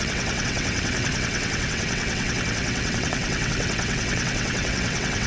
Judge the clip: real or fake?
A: fake